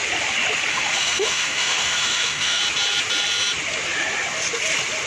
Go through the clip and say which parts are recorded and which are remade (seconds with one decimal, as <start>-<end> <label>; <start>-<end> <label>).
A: 0.0-0.7 recorded; 0.7-2.6 remade; 2.6-5.1 recorded